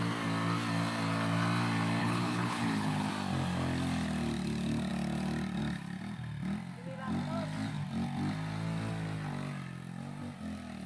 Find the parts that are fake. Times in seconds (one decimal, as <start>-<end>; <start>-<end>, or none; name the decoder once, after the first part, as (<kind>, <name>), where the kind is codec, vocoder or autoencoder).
2.0-3.1 (codec, HILCodec)